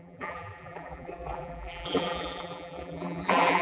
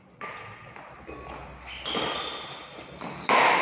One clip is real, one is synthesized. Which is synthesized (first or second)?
first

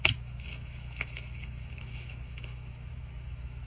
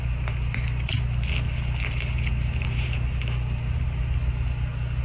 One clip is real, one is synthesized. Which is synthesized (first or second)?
first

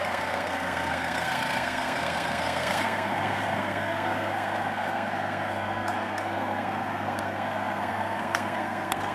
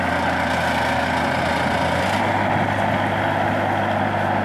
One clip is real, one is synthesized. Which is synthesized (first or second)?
first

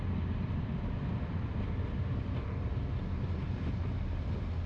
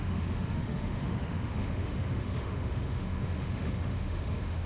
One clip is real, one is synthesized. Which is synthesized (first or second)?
second